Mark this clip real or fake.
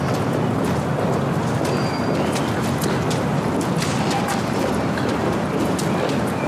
real